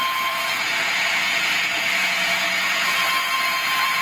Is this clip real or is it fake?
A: fake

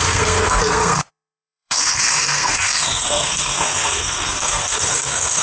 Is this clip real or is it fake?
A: fake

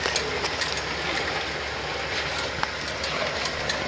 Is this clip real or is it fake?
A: real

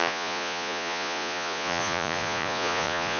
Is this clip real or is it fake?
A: fake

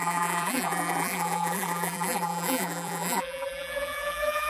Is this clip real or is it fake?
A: fake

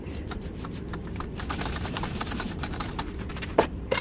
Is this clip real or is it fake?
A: fake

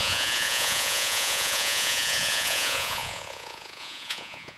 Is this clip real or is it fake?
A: fake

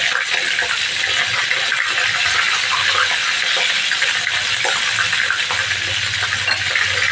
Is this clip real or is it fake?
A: real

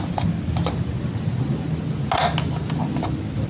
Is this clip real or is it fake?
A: real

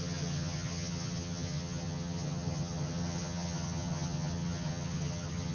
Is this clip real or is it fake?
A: fake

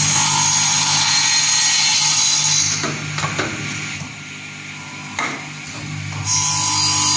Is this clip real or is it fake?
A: real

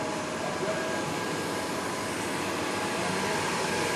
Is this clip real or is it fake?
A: real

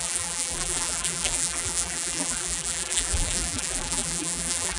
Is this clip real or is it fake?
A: fake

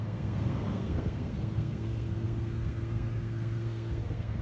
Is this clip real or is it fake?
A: fake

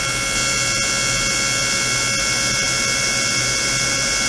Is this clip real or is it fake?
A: real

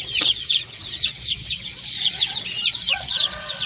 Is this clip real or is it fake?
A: fake